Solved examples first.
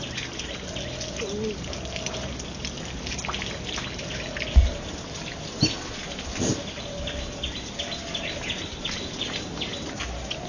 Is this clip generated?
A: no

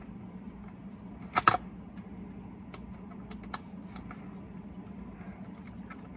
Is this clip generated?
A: no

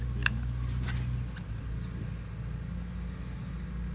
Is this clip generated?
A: no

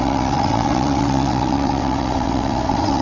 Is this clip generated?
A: yes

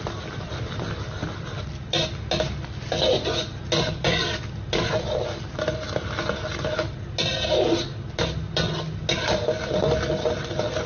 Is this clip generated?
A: no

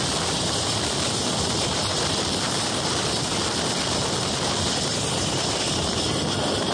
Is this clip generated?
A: no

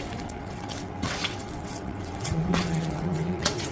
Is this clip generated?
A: yes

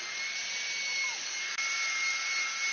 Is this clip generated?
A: no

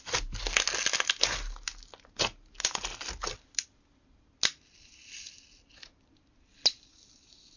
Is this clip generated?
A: no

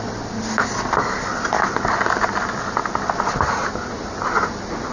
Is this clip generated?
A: no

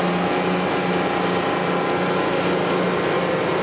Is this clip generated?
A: no